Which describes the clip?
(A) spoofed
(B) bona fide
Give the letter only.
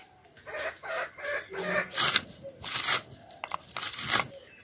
B